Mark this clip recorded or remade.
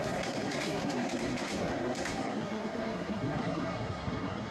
remade